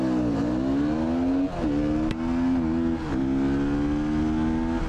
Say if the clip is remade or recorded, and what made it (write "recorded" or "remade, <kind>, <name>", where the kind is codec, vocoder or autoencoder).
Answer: recorded